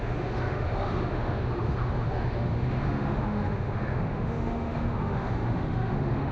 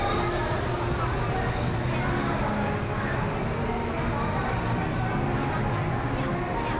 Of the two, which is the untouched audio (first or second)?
second